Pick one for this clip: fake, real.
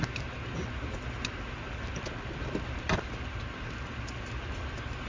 real